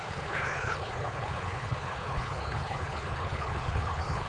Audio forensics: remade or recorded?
remade